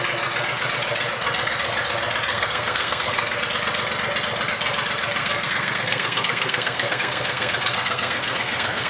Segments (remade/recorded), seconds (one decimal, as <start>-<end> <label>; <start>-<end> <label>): 0.0-2.3 recorded; 2.3-3.4 remade; 3.4-5.2 recorded; 5.2-8.9 remade

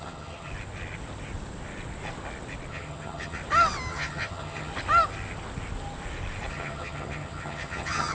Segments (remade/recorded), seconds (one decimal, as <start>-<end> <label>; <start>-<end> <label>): 0.0-0.5 remade; 0.5-2.7 recorded; 2.7-3.4 remade; 3.4-3.9 recorded; 3.9-4.7 remade; 4.7-6.5 recorded; 6.5-8.1 remade

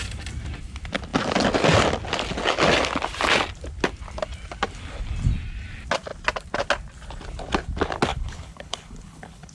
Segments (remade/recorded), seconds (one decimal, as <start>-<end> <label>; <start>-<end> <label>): 0.0-8.1 recorded; 8.1-9.5 remade

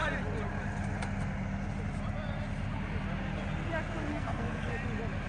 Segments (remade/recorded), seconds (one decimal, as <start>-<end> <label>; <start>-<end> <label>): 0.0-4.1 recorded; 4.1-4.7 remade; 4.7-5.3 recorded

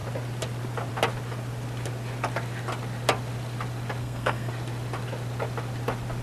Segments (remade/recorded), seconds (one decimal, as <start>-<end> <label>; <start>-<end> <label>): 0.0-4.0 recorded; 4.0-4.5 remade; 4.5-6.2 recorded

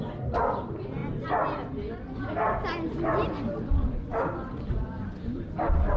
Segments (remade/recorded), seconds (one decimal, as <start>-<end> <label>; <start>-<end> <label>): 0.0-6.0 recorded

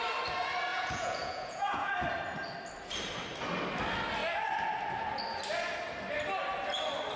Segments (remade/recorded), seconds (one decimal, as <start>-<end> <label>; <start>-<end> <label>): 0.0-0.7 recorded; 0.7-1.9 remade; 1.9-7.2 recorded

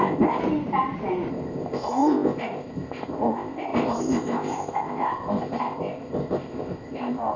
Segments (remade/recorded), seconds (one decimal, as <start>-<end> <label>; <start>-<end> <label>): 0.0-0.4 remade; 0.4-1.3 recorded; 1.3-7.4 remade